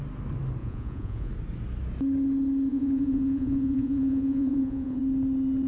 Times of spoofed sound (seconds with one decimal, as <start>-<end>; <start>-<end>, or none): 0.6-1.3; 2.7-5.0

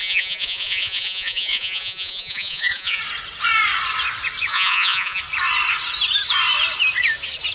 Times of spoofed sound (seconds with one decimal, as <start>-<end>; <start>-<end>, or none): 0.0-3.0; 4.5-5.2